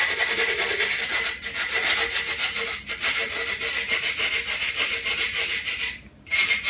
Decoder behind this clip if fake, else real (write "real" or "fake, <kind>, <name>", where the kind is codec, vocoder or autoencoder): real